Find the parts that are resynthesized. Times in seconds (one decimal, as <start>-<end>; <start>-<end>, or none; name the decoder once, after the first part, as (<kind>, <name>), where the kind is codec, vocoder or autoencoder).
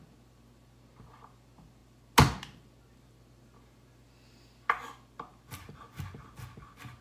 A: none